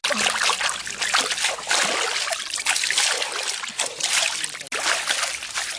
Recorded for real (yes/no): yes